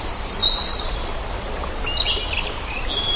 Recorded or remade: recorded